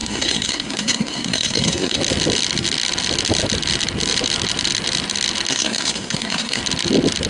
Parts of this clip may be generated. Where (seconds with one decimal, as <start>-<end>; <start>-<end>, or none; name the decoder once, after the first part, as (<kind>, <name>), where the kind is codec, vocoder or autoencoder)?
0.0-2.0 (codec, SNAC); 5.5-6.6